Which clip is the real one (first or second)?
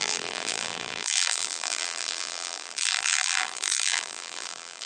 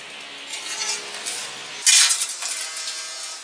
second